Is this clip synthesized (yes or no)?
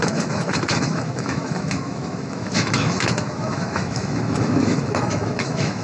yes